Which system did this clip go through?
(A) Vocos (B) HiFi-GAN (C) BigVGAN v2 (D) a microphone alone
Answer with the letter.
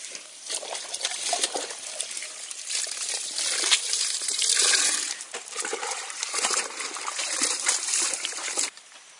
C